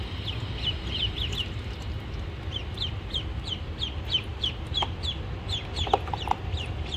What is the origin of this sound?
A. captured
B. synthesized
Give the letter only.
A